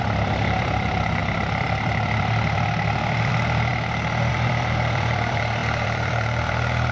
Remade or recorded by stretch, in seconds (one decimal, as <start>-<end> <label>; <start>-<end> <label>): 0.0-3.7 remade; 3.7-4.3 recorded; 4.3-6.9 remade